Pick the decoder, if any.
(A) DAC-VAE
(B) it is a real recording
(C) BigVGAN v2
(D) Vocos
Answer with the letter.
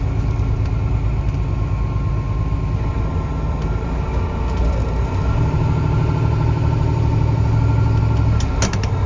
B